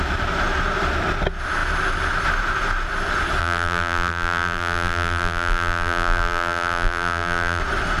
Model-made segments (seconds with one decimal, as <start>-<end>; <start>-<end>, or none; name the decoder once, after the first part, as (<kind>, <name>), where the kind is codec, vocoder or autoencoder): 3.4-7.6 (vocoder, BigVGAN v2)

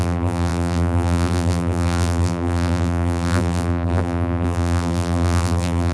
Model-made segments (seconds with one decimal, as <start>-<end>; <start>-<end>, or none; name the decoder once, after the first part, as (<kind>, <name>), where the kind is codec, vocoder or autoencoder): 0.0-5.9 (vocoder, BigVGAN v2)